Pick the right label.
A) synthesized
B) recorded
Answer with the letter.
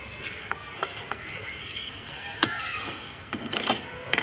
A